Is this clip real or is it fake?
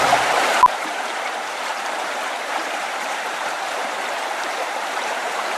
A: fake